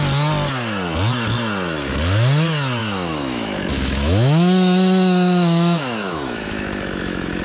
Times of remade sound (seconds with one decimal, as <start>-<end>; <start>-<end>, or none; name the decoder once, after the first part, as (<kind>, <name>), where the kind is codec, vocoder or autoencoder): 2.8-7.4 (autoencoder, DAC-VAE)